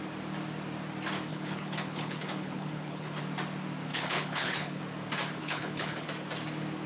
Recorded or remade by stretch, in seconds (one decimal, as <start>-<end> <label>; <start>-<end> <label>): 0.0-1.3 recorded; 1.3-3.2 remade; 3.2-3.9 recorded; 3.9-4.8 remade; 4.8-5.4 recorded; 5.4-6.1 remade; 6.1-6.9 recorded